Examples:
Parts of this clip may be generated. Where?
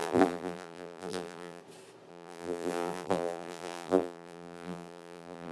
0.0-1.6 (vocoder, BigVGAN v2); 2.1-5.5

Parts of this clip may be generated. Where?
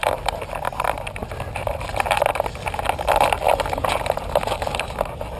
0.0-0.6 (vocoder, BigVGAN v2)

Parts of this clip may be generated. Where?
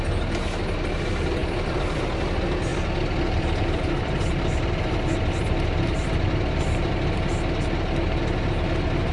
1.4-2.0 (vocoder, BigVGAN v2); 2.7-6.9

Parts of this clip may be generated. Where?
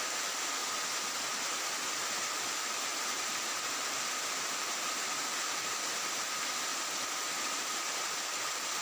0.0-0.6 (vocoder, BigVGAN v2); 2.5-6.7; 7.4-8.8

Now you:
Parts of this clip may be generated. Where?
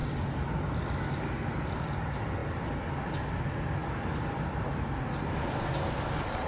none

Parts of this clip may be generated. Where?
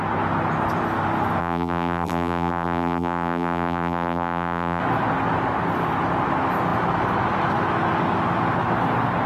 1.4-4.8 (vocoder, BigVGAN v2)